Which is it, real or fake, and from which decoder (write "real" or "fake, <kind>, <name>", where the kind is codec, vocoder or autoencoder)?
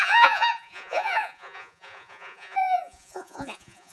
fake, vocoder, Vocos